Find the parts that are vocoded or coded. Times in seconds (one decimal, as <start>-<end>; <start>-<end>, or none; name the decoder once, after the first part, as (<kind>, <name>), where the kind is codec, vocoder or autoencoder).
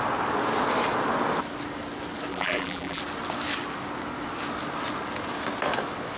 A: 2.3-3.0 (vocoder, BigVGAN v2)